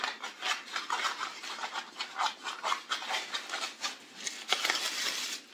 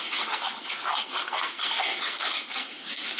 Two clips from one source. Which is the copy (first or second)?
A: second